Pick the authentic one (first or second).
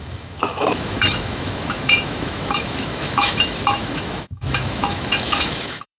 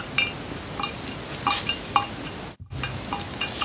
second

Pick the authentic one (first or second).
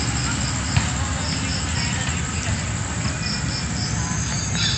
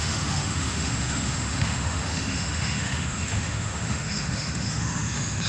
first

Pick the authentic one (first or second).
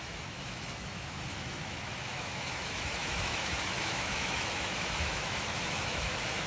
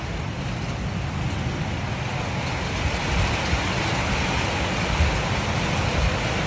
second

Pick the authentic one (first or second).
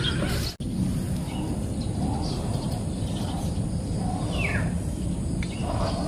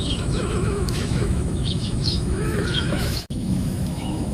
first